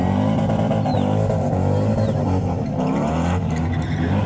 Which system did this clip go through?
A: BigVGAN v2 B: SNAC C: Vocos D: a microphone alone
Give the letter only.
D